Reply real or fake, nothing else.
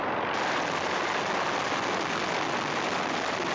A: real